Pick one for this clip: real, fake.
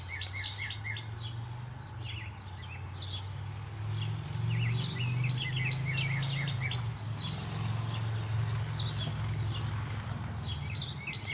real